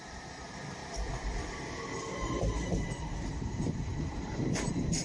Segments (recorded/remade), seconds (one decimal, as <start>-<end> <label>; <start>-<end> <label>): 0.0-0.8 remade; 0.8-1.9 recorded; 1.9-5.0 remade